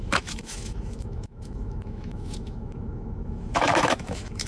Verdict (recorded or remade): remade